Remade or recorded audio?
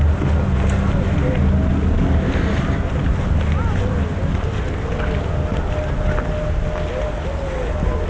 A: recorded